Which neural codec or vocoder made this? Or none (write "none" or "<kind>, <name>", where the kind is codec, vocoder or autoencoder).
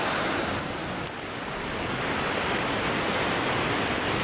none